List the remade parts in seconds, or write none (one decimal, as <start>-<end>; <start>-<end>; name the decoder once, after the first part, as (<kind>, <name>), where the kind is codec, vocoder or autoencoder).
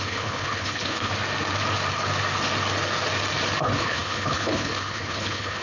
0.0-1.1 (codec, HILCodec); 3.6-5.6